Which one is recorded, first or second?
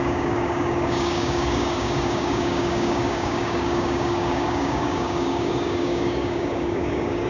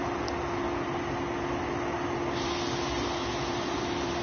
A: second